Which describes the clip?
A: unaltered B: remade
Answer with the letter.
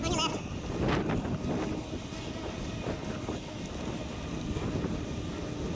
A